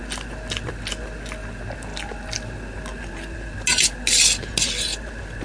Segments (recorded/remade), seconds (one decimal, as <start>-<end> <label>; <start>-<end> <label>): 0.0-5.4 recorded